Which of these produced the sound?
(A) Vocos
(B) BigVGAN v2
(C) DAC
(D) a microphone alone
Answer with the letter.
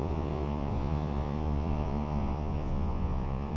A